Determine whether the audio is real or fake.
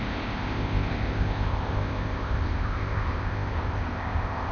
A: fake